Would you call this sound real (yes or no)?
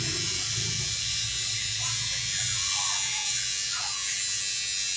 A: yes